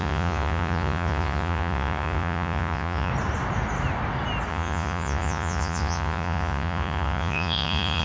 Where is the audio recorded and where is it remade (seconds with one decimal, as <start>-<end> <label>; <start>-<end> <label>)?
0.0-3.1 remade; 3.1-4.5 recorded; 4.5-8.0 remade